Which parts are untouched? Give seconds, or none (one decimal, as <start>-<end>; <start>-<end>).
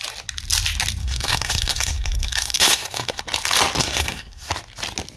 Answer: 0.0-1.0; 3.2-3.8; 4.5-5.2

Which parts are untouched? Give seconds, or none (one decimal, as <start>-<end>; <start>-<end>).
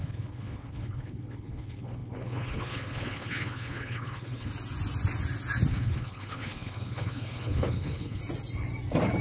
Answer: 4.5-5.7; 8.2-9.2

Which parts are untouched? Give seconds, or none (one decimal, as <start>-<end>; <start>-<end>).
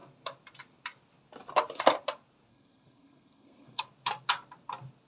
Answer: 0.0-2.5; 3.8-5.1